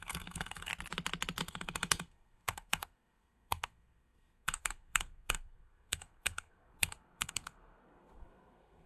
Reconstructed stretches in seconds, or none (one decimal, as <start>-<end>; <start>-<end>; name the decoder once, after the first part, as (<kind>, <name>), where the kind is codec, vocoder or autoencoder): 0.0-0.7 (codec, SNAC); 1.4-8.9